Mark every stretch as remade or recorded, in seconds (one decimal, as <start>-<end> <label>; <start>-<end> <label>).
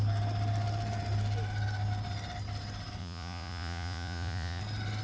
0.0-3.0 recorded; 3.0-4.6 remade; 4.6-5.0 recorded